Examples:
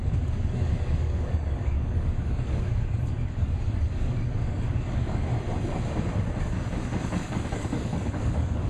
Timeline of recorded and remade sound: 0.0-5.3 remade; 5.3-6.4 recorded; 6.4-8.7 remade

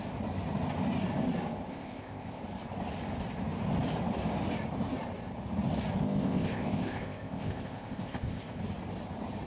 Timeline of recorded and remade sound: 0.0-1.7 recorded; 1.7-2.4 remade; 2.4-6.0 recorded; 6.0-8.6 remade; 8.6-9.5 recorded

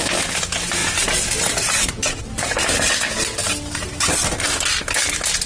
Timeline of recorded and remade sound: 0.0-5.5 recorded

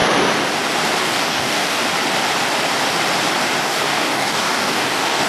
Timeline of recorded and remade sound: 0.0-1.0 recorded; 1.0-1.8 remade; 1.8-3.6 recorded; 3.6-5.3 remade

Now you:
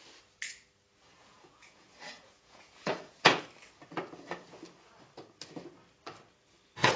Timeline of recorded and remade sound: 0.0-1.1 recorded; 1.1-3.4 remade; 3.4-7.0 recorded

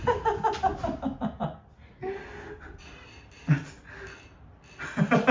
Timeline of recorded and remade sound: 0.0-5.3 recorded

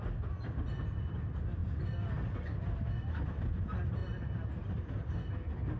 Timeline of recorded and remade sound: 0.0-5.8 recorded